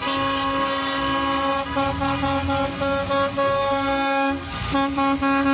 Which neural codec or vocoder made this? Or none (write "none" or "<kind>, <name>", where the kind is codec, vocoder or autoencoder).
none